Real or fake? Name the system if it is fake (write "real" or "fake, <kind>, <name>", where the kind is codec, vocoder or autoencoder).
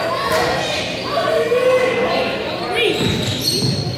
real